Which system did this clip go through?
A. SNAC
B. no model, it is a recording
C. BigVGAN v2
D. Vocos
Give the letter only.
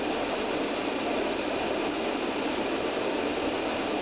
B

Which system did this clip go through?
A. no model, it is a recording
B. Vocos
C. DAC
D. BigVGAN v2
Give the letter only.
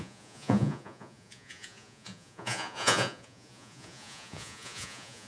B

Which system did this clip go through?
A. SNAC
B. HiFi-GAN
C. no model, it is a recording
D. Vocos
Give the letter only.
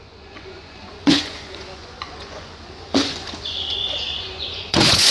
D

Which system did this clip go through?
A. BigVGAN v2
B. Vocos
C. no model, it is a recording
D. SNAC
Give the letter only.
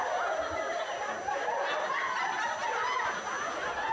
C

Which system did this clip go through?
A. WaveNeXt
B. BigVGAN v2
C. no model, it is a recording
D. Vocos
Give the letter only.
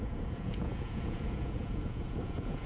D